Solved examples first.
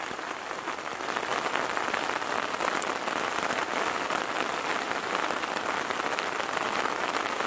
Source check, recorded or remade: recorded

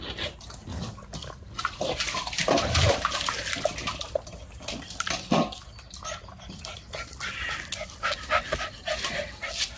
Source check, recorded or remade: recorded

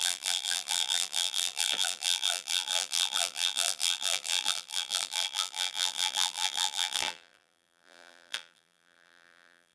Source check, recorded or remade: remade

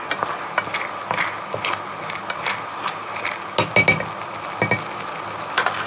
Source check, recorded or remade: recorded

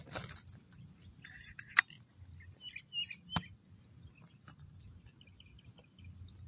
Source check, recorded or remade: recorded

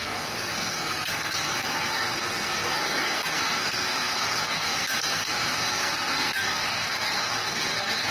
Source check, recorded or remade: remade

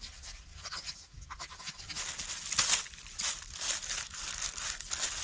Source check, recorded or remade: recorded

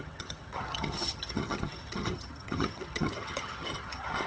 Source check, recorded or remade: remade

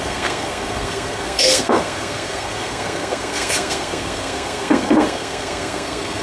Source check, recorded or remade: remade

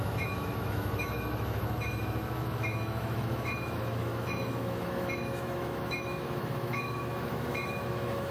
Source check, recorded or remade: remade